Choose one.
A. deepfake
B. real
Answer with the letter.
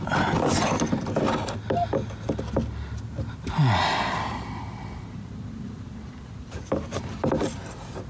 B